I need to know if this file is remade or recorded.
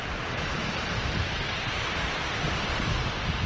remade